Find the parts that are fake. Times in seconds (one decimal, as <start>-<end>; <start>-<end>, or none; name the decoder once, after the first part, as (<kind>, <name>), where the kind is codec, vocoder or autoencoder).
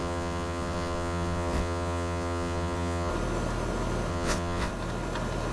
0.0-3.1 (vocoder, WaveNeXt); 4.1-4.7